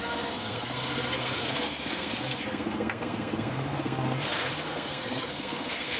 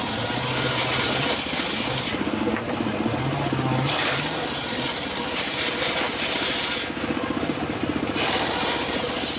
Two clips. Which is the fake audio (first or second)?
first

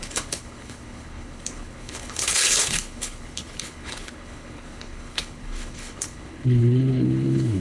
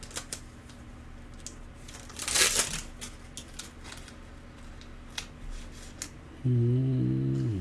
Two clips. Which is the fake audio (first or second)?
first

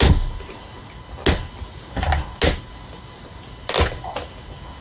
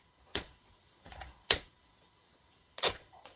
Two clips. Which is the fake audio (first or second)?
second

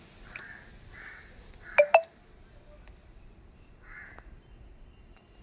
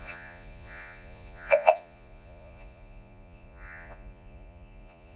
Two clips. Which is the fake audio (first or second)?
second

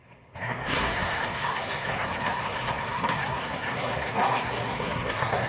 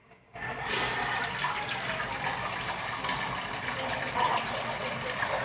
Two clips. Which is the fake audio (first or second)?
first